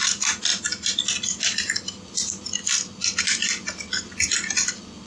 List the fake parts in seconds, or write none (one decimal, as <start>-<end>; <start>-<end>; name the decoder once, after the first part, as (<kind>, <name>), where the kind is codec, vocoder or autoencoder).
none